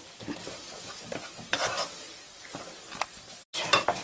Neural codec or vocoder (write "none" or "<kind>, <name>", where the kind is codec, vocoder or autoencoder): none